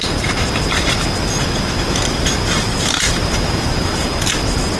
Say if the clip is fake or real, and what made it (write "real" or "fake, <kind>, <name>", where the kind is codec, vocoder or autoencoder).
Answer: real